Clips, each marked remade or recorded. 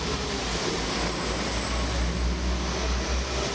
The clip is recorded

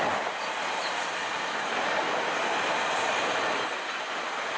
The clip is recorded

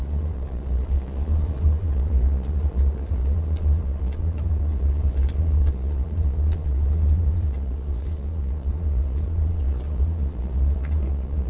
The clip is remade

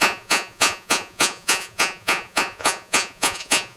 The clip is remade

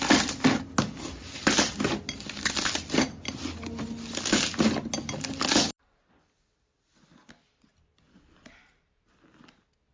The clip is recorded